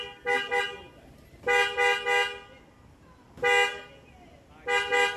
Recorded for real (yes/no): yes